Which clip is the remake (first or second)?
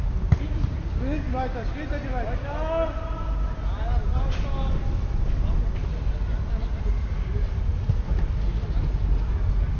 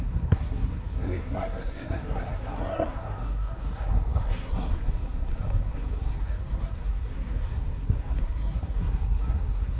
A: second